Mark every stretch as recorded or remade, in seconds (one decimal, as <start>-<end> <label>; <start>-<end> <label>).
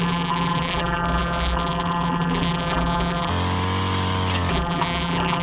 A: 0.0-3.3 remade; 3.3-4.5 recorded; 4.5-5.4 remade